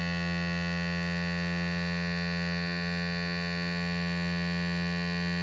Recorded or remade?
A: recorded